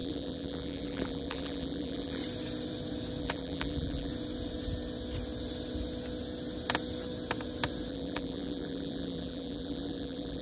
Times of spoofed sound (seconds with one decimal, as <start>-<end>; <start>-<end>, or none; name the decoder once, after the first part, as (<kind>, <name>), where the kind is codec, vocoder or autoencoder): 0.0-2.2 (vocoder, BigVGAN v2); 3.2-4.1; 7.9-10.4